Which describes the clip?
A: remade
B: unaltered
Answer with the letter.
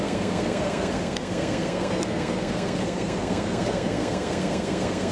A